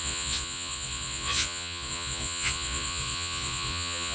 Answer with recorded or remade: remade